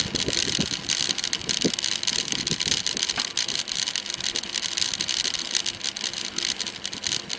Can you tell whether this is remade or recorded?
recorded